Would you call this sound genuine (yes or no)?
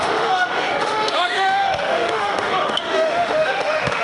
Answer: no